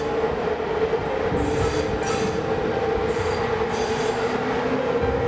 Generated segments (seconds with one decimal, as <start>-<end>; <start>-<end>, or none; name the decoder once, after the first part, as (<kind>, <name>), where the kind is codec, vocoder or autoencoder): none